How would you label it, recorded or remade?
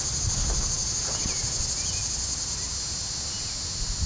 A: recorded